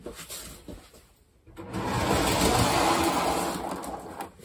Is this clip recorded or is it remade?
recorded